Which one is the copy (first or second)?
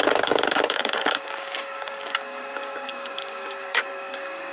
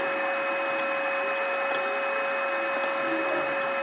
first